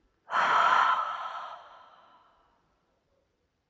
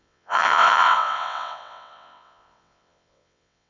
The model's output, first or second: second